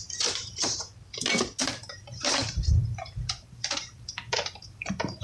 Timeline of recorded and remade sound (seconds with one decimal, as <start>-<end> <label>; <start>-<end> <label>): 0.0-0.9 remade; 0.9-1.6 recorded; 1.6-5.2 remade